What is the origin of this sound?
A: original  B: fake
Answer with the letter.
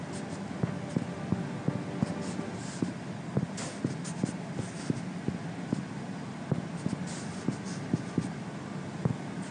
A